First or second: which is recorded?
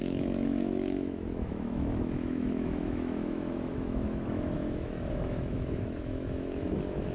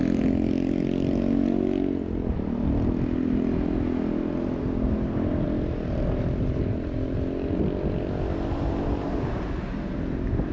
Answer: second